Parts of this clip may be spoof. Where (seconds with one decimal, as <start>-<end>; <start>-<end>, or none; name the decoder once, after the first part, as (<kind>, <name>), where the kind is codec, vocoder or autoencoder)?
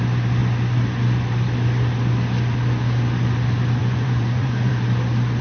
3.8-4.7 (vocoder, Vocos)